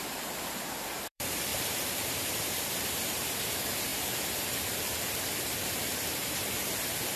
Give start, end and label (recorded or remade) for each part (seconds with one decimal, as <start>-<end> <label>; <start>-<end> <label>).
0.0-7.2 remade